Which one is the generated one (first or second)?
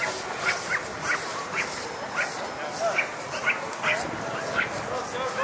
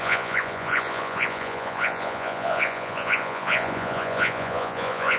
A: second